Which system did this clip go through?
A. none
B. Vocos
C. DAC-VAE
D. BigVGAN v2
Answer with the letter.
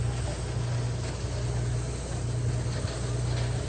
A